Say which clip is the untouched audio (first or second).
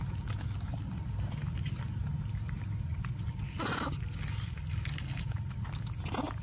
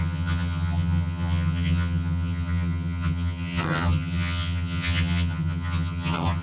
first